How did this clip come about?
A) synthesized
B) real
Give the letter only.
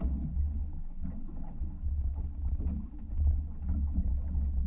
B